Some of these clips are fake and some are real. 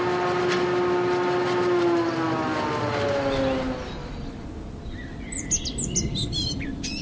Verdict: real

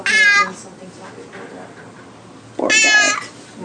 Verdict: real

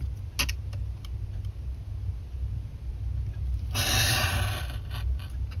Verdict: real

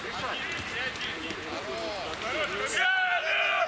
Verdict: real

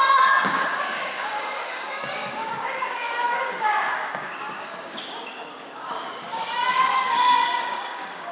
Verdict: fake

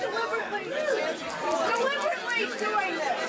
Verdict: real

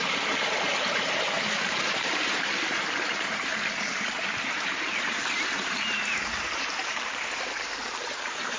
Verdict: fake